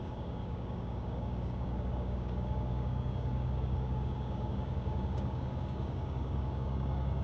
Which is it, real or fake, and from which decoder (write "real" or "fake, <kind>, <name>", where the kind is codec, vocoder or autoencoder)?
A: fake, codec, DAC